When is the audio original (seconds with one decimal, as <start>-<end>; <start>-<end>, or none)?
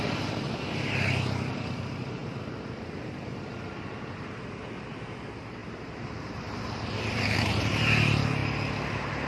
8.4-9.3